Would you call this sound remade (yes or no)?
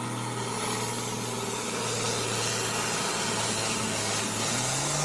no